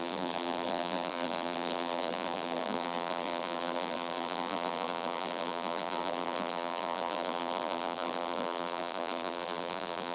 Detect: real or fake fake